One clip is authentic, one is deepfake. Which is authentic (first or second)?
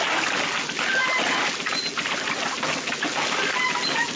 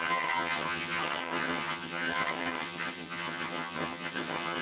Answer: first